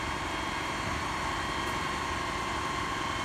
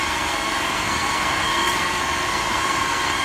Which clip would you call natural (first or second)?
first